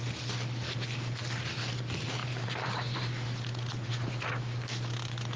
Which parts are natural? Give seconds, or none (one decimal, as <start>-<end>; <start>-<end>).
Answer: 0.0-2.2; 3.1-5.4